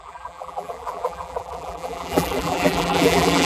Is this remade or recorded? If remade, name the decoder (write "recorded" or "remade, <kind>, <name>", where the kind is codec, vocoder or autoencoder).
remade, vocoder, BigVGAN v2